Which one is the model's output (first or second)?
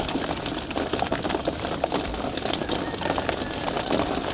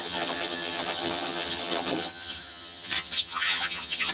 second